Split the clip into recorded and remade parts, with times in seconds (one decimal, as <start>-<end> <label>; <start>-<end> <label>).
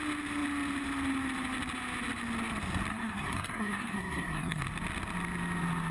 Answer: 0.0-2.9 recorded; 2.9-4.6 remade; 4.6-5.9 recorded